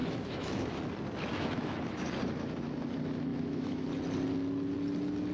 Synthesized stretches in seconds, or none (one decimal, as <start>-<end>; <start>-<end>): 0.0-0.8; 1.3-2.0; 3.3-3.9